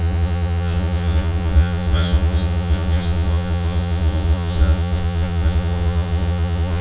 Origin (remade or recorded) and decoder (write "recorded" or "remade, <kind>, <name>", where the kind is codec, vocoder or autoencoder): remade, vocoder, Vocos